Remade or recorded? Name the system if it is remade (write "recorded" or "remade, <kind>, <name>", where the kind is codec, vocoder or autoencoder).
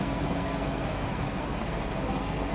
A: remade, codec, SNAC